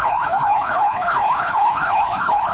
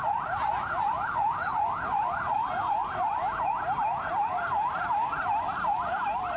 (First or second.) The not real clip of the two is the first